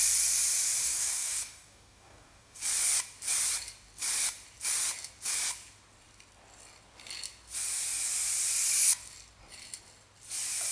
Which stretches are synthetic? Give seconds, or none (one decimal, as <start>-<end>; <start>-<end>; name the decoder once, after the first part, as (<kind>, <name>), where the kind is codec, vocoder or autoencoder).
0.8-2.6 (codec, DAC)